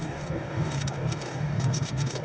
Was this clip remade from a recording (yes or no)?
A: yes